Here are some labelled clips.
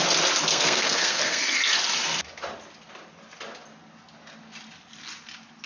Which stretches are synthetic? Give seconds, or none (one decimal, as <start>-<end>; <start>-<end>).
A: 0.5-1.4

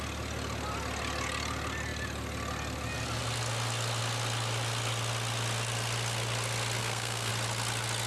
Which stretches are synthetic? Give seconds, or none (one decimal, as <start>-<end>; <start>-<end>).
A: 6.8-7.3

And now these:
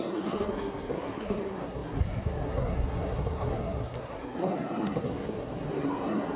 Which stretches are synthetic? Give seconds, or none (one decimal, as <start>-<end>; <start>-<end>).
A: 0.0-6.4

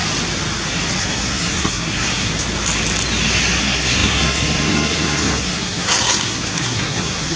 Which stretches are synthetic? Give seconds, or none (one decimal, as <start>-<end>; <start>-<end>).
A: 1.0-2.3; 3.6-7.4

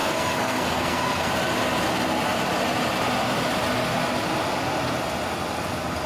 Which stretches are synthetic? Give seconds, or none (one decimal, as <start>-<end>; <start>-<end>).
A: 0.0-1.3